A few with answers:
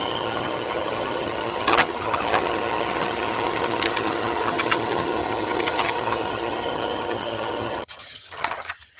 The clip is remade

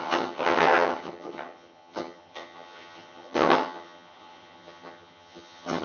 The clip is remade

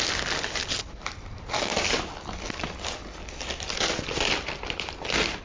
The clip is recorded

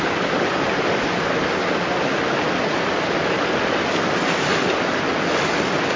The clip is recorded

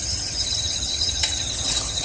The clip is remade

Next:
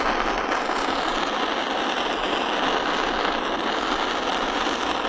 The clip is recorded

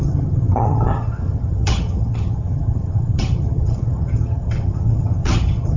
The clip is remade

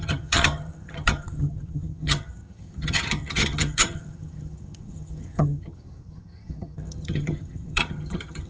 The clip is remade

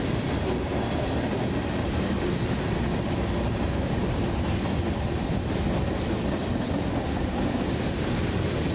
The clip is recorded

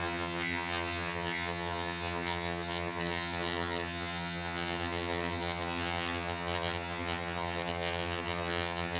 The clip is remade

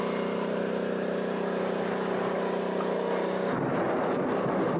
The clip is recorded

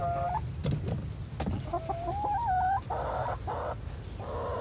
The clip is recorded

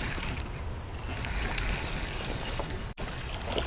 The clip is recorded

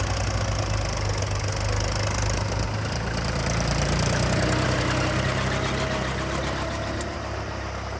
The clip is recorded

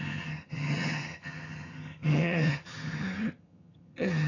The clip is remade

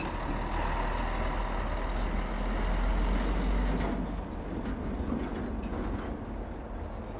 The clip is recorded